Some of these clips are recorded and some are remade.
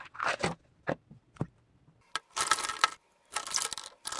recorded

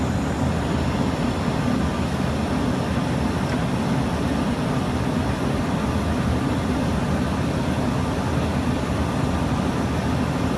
recorded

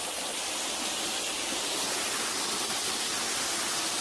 recorded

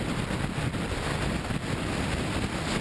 recorded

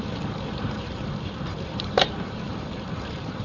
remade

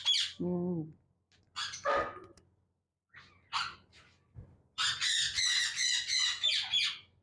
recorded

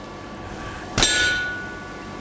recorded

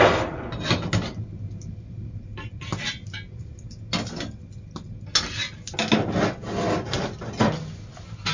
recorded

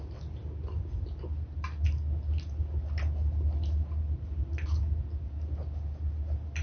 recorded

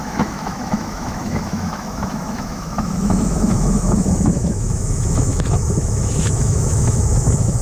remade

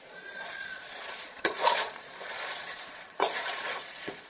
remade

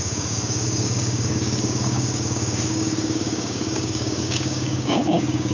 remade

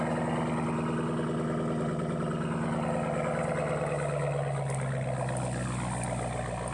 recorded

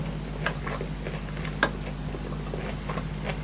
recorded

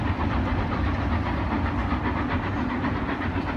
recorded